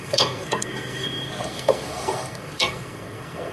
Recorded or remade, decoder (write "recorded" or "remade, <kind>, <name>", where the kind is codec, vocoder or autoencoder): remade, codec, SNAC